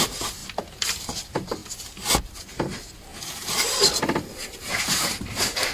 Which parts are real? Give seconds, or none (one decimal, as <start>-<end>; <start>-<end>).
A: 0.4-0.9; 1.6-2.2